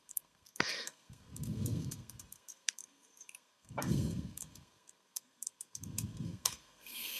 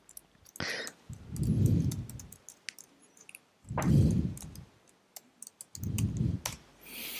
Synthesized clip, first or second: first